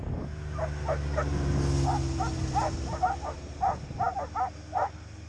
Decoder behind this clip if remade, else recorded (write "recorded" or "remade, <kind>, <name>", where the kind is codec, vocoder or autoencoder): recorded